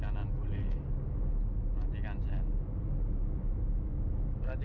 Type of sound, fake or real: real